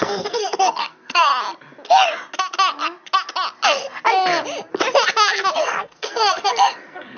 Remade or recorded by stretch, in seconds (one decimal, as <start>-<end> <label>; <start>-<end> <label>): 0.0-1.3 remade; 1.3-5.6 recorded; 5.6-7.2 remade